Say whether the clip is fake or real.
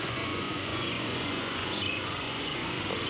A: fake